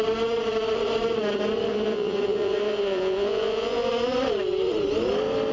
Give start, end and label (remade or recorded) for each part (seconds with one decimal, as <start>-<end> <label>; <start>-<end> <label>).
0.0-1.7 recorded; 1.7-3.9 remade; 3.9-5.5 recorded